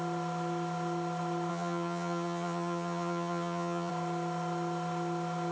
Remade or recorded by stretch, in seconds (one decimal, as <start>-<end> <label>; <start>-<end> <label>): 0.0-1.5 recorded; 1.5-3.9 remade; 3.9-5.5 recorded